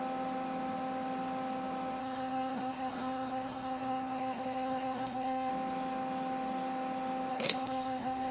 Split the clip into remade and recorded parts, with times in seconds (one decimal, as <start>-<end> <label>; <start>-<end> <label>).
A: 0.0-2.0 recorded; 2.0-5.5 remade; 5.5-7.3 recorded; 7.3-8.3 remade